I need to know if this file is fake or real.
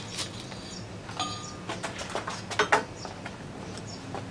real